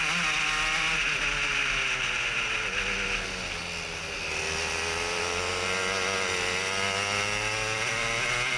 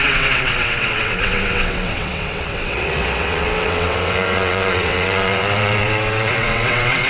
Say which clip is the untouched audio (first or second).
first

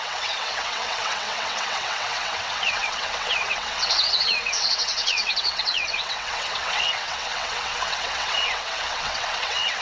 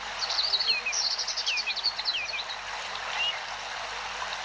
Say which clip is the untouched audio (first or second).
second